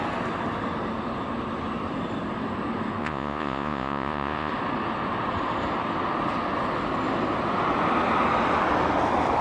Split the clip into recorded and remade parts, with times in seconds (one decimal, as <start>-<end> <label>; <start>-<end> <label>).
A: 0.0-3.0 recorded; 3.0-4.5 remade; 4.5-9.4 recorded